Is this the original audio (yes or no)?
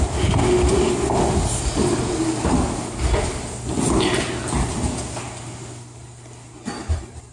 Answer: yes